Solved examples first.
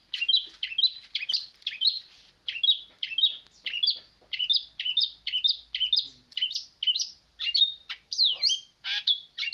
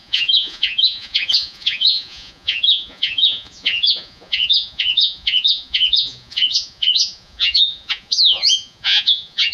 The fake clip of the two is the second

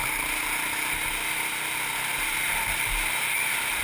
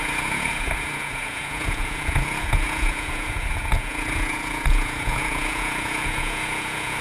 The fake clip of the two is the second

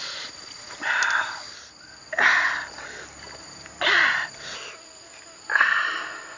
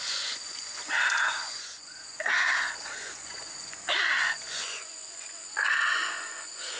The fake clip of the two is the second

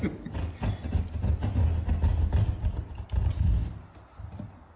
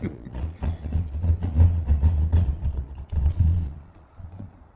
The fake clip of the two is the second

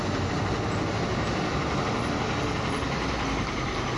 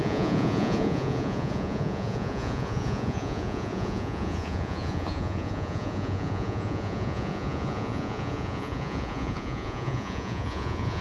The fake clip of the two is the second